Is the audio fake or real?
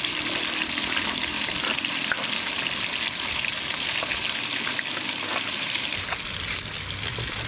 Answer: real